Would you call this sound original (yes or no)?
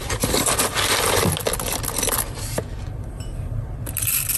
yes